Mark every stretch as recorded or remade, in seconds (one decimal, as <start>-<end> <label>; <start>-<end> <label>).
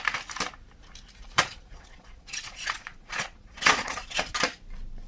0.0-1.2 recorded; 1.2-4.3 remade; 4.3-5.1 recorded